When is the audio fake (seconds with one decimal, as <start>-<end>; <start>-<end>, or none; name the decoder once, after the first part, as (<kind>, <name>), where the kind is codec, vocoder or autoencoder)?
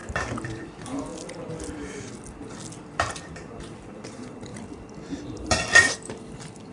0.0-6.7 (vocoder, BigVGAN v2)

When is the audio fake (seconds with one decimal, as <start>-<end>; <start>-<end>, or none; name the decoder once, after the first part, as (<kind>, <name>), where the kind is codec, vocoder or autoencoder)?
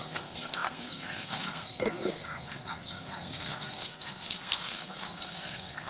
0.0-5.9 (codec, SNAC)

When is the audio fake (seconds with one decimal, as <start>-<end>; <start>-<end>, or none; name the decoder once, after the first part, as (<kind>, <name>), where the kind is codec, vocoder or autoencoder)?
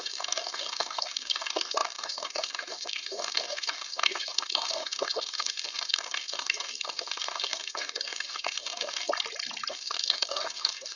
0.0-9.1 (codec, DAC); 9.7-11.0